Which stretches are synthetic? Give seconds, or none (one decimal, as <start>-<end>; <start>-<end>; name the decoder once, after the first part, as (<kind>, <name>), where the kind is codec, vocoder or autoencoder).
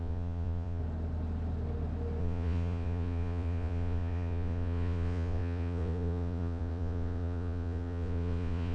0.0-0.8 (vocoder, Vocos); 2.2-8.7